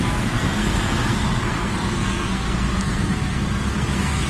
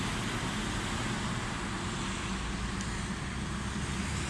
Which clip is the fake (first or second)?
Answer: first